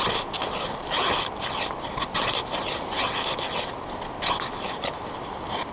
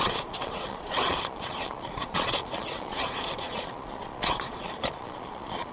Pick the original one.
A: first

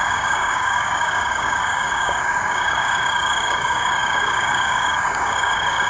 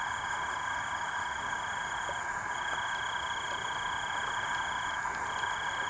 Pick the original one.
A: second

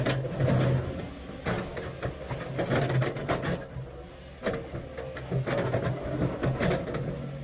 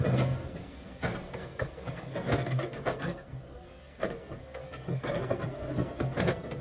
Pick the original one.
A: first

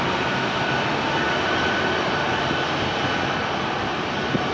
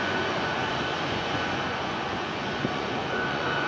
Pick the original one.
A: first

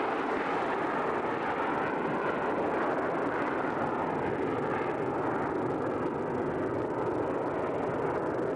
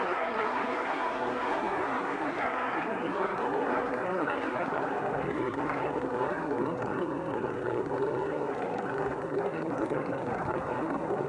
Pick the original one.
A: first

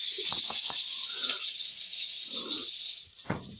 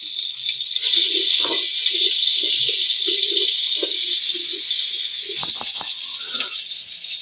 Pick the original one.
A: second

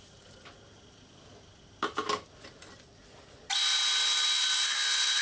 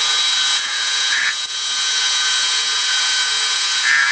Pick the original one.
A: first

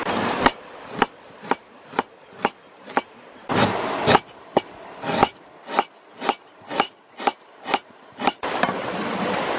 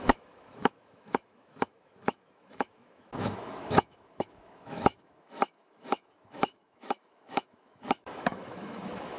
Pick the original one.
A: first